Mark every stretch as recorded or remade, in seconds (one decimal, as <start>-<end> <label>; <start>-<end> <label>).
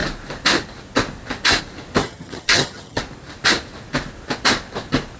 0.0-2.0 recorded; 2.0-3.0 remade; 3.0-5.2 recorded